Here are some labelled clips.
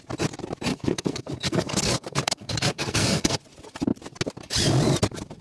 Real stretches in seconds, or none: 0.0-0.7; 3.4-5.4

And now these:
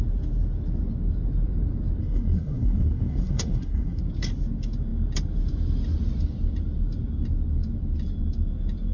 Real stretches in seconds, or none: 0.0-2.0; 4.0-8.9

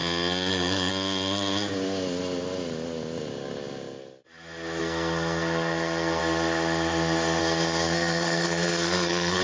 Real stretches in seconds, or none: 0.0-0.5; 0.9-4.8; 6.2-7.4

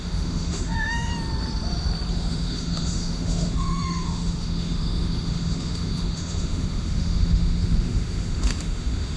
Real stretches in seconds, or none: 1.1-2.1

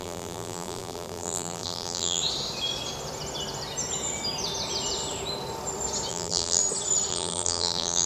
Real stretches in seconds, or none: 2.2-6.1; 6.6-7.1

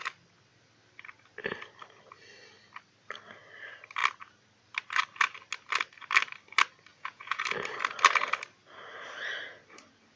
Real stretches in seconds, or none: 0.0-6.9; 7.4-10.2

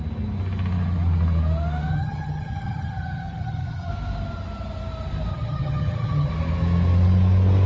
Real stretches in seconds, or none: 0.0-1.9; 3.9-5.3; 6.3-7.7